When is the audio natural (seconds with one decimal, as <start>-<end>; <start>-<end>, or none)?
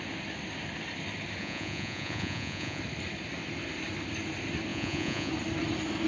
0.0-1.4; 2.8-4.7; 5.3-6.1